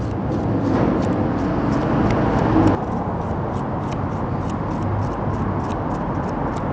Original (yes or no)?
yes